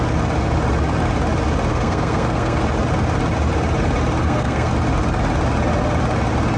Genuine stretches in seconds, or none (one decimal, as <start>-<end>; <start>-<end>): 0.0-1.7; 2.6-4.2; 4.7-6.6